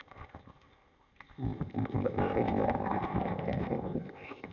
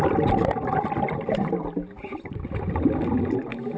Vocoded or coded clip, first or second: first